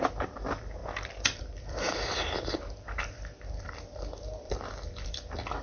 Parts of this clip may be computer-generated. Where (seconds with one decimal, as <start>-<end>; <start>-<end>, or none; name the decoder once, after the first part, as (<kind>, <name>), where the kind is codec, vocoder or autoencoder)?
0.0-5.6 (vocoder, BigVGAN v2)